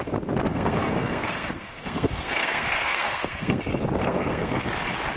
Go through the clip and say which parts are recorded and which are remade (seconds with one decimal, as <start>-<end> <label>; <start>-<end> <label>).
0.0-0.5 recorded; 0.5-3.6 remade; 3.6-4.0 recorded; 4.0-4.6 remade; 4.6-5.2 recorded